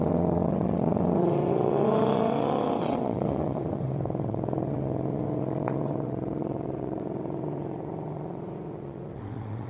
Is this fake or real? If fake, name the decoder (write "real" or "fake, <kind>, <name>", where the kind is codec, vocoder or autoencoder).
fake, vocoder, WaveNeXt